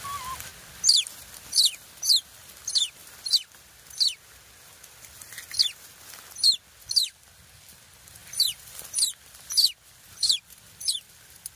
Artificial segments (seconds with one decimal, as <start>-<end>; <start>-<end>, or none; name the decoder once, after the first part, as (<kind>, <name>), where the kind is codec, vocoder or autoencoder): 0.0-0.5 (vocoder, BigVGAN v2); 1.5-3.0; 6.8-11.6